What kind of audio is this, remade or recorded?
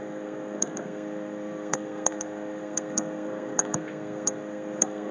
remade